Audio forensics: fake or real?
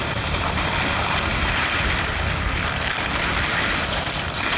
fake